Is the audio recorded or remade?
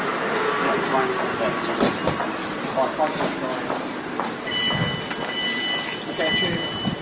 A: recorded